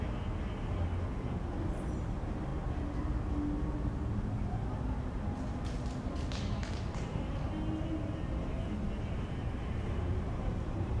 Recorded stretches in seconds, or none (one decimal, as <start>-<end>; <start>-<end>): 0.0-6.6; 7.4-8.6